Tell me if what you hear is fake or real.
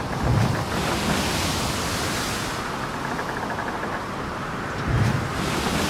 real